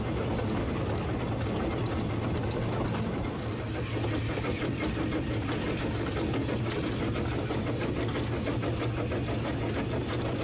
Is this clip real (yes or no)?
yes